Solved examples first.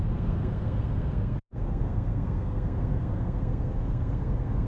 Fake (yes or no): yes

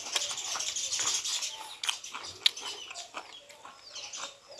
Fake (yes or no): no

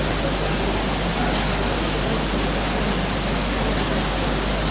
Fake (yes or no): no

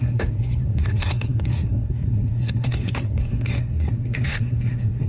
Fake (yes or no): yes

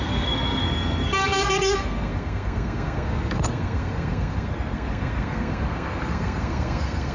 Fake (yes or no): yes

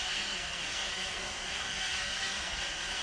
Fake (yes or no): yes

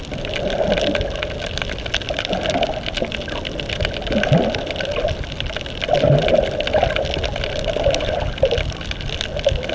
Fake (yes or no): no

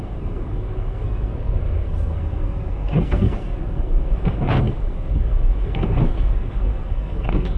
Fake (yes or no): yes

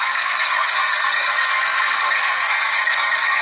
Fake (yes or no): yes